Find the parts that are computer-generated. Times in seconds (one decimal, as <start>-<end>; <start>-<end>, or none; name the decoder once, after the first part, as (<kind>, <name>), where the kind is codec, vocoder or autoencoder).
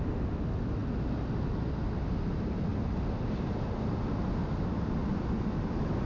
none